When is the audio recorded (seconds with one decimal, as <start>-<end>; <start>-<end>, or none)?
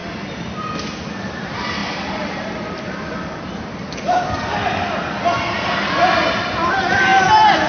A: 0.9-1.8; 3.3-7.1